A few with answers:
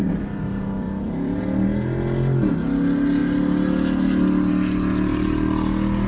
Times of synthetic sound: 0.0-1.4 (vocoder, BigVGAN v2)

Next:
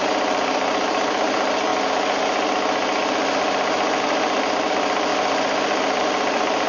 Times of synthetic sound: 0.0-1.7 (vocoder, BigVGAN v2); 4.0-5.1; 6.0-6.7

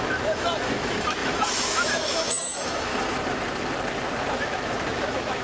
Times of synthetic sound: 0.0-2.9 (autoencoder, DAC-VAE); 4.4-5.4

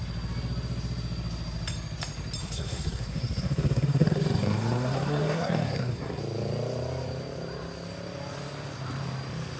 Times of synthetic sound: 2.4-6.2 (codec, SNAC)

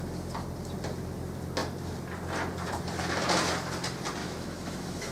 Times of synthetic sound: 4.2-5.1 (autoencoder, DAC-VAE)